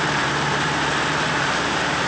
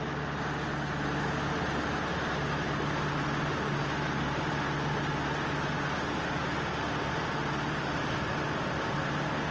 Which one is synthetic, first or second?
first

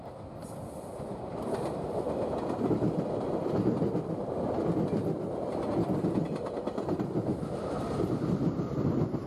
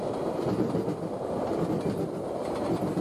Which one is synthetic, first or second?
first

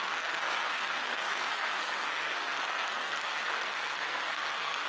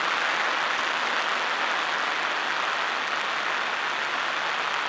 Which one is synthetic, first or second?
first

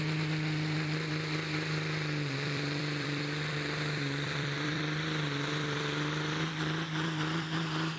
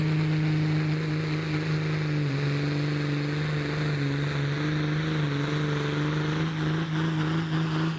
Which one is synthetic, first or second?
first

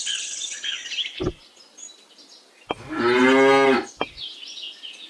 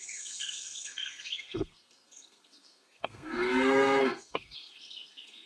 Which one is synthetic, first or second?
second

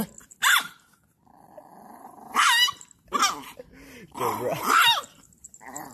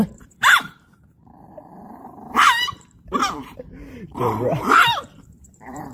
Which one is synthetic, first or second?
second